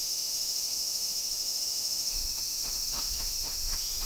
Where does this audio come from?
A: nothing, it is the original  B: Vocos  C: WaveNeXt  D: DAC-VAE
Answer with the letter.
D